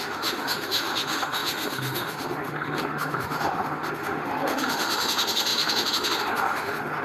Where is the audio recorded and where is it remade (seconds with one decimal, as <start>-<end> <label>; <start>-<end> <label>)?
0.0-7.0 remade